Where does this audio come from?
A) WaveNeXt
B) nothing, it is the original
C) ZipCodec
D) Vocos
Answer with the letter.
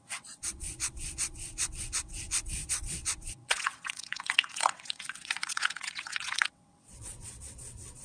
A